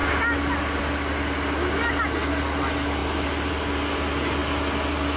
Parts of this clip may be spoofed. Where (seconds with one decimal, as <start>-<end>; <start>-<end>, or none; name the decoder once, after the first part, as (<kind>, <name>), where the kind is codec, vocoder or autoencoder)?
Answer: none